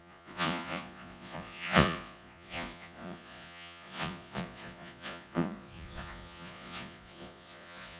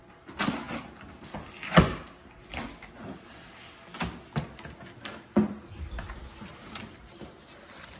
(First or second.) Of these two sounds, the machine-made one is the first